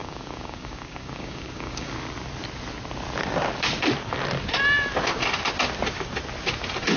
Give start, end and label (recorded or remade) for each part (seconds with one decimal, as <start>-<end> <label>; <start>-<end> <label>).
0.0-1.9 remade; 1.9-7.0 recorded